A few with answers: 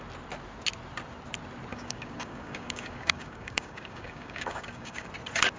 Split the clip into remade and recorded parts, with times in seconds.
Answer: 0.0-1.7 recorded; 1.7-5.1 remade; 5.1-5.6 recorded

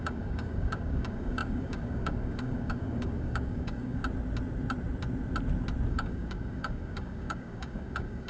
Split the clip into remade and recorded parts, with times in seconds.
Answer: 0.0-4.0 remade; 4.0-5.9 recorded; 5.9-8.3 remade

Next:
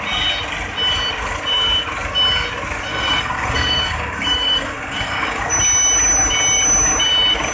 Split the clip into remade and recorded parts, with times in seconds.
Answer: 0.0-2.9 recorded; 2.9-5.5 remade; 5.5-7.5 recorded